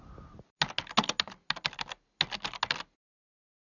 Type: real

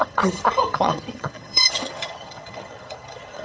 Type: fake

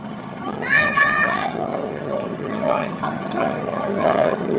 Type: fake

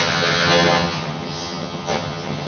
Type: fake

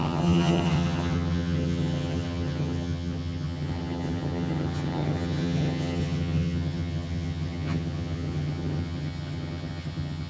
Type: fake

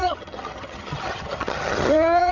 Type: fake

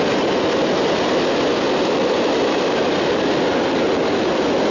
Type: real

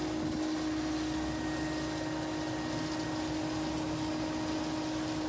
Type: real